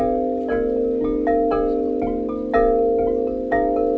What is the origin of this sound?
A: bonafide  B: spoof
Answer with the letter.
A